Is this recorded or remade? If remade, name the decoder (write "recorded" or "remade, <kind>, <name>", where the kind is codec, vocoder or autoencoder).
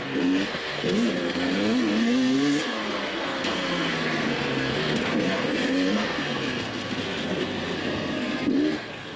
remade, codec, SNAC